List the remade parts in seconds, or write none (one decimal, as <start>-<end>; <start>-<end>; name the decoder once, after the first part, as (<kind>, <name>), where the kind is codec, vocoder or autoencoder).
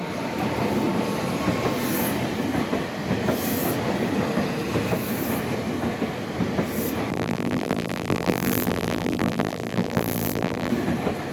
7.1-10.7 (vocoder, BigVGAN v2)